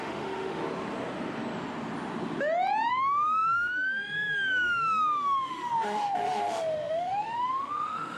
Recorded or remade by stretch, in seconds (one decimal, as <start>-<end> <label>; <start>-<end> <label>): 0.0-0.6 remade; 0.6-2.9 recorded; 2.9-8.2 remade